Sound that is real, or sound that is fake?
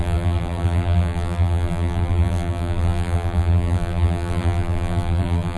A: fake